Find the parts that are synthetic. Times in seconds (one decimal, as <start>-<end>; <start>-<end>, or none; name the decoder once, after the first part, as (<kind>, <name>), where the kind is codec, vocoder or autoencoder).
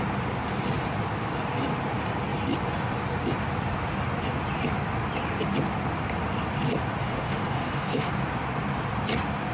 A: 7.0-8.1 (autoencoder, DAC-VAE)